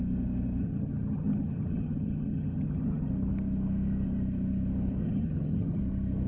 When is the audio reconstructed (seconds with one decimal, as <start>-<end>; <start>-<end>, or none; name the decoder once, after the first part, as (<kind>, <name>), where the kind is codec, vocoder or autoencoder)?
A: 0.6-3.1 (vocoder, HiFi-GAN); 5.0-5.8